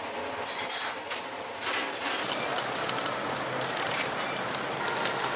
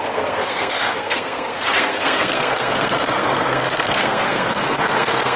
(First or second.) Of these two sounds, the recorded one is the first